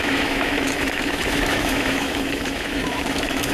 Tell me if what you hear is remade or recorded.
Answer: remade